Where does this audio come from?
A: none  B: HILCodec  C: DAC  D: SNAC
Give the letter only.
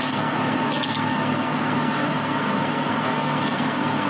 D